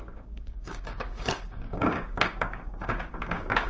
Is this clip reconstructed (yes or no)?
yes